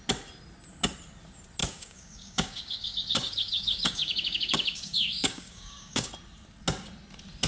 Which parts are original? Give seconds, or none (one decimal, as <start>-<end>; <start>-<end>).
0.0-1.6; 6.1-7.5